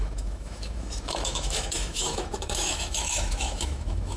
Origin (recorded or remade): remade